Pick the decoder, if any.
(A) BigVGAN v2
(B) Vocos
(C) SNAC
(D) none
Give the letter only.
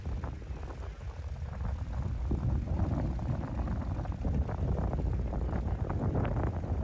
D